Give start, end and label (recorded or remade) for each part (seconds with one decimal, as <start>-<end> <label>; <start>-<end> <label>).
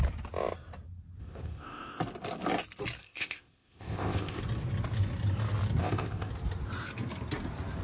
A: 0.0-1.2 recorded; 1.2-2.0 remade; 2.0-3.0 recorded; 3.0-4.4 remade; 4.4-5.8 recorded; 5.8-6.3 remade; 6.3-7.8 recorded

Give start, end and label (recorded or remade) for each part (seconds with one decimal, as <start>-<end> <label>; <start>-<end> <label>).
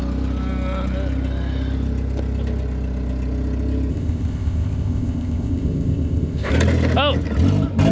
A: 0.0-3.9 recorded; 3.9-6.5 remade; 6.5-7.9 recorded